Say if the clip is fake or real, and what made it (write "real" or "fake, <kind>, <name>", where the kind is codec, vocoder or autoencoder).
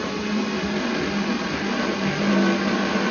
real